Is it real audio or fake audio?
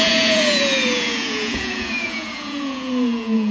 fake